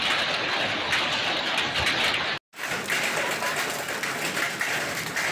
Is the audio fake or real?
real